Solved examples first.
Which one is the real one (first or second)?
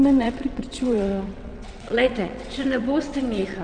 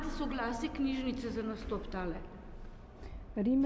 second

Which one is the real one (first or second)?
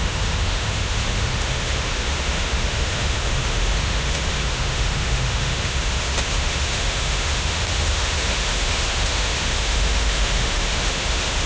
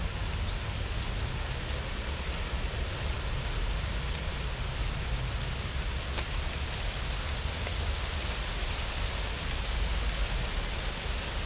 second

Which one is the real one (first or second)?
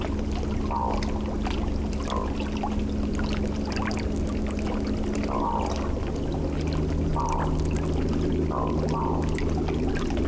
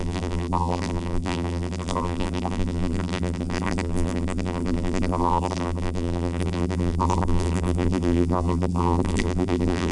first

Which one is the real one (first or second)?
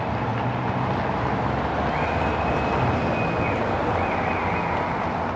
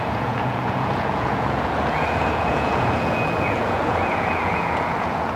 first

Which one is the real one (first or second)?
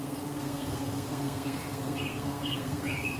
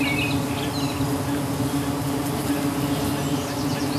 second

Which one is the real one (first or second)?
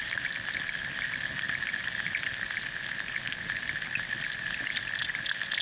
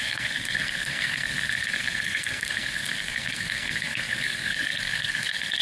first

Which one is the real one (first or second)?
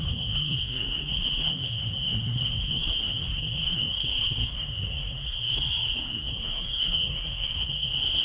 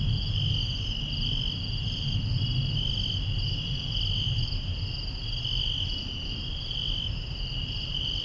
second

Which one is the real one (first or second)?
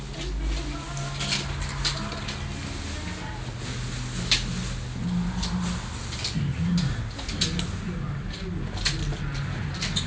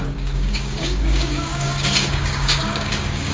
first